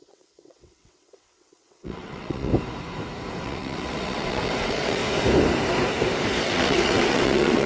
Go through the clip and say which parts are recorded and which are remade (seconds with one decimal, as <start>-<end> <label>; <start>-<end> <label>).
0.0-2.5 remade; 2.5-3.4 recorded; 3.4-5.0 remade; 5.0-6.4 recorded; 6.4-7.7 remade